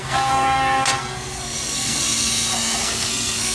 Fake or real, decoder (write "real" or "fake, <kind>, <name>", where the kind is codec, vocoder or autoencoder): fake, codec, SNAC